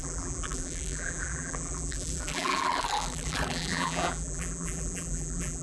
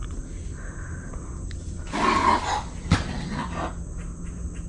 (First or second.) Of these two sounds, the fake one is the first